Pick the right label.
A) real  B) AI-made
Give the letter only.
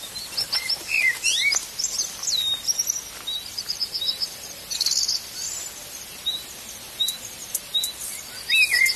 A